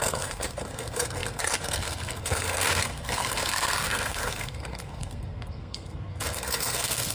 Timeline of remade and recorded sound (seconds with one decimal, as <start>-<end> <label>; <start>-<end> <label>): 0.0-7.1 remade